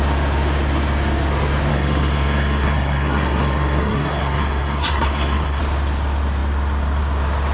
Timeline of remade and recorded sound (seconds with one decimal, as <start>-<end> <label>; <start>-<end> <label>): 0.0-1.7 recorded; 1.7-5.6 remade; 5.6-7.5 recorded